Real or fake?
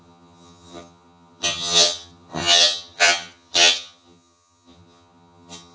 fake